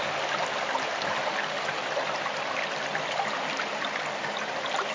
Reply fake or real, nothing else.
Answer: real